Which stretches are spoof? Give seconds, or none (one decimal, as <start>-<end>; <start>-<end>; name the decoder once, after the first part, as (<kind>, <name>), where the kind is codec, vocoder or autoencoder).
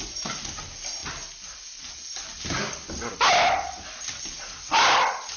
none